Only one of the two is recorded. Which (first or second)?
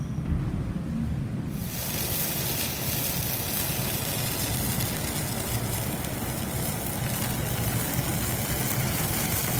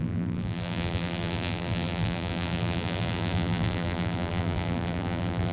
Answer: first